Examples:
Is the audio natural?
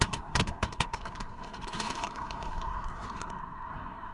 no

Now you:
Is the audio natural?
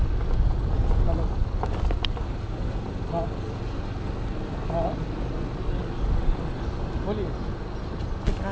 yes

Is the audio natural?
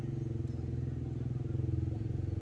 yes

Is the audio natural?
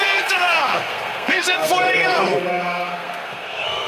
no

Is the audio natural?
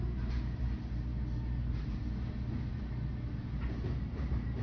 yes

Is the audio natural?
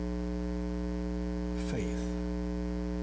yes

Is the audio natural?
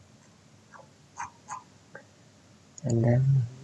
yes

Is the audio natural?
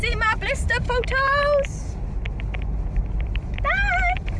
yes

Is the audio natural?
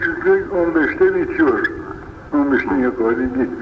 yes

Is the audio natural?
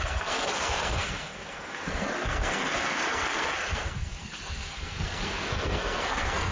no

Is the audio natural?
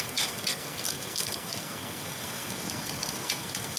no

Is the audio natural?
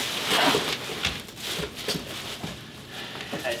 yes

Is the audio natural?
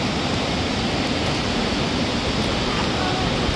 yes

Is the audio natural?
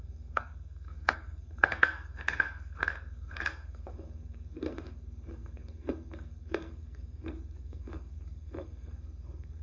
no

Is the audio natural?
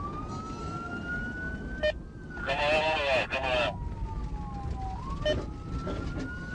yes